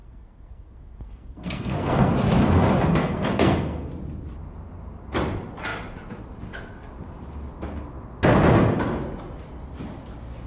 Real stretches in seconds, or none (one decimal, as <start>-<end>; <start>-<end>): 2.1-3.0; 3.9-10.5